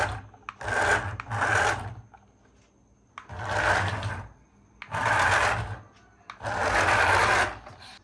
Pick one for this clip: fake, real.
real